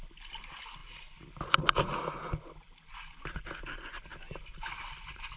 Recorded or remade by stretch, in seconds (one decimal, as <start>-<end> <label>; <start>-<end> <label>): 0.0-4.1 recorded; 4.1-5.4 remade